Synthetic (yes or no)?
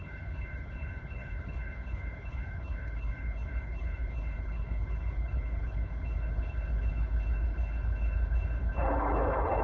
yes